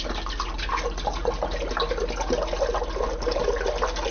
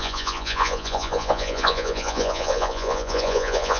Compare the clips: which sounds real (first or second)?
first